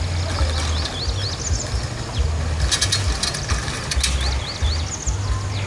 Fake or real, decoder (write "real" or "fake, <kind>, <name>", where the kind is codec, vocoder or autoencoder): real